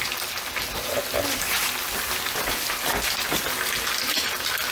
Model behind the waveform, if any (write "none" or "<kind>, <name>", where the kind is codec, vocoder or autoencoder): none